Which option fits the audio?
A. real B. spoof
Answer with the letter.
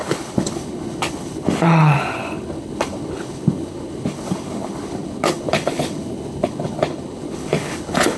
B